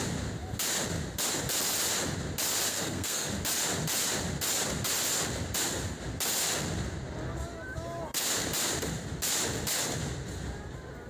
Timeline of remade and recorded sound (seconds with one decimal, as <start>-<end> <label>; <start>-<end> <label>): 0.0-2.7 recorded; 2.7-3.3 remade; 3.3-11.1 recorded